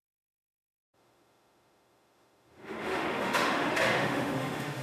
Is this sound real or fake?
fake